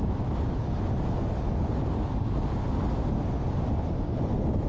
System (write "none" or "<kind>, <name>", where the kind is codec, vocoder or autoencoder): none